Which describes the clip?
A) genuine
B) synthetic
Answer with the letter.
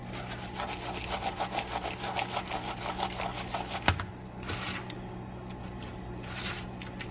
A